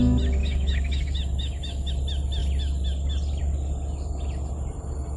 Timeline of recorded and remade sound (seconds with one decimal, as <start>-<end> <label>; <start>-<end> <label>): 0.0-0.4 recorded; 0.4-1.9 remade; 1.9-5.2 recorded